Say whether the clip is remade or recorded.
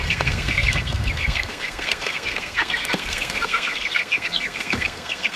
remade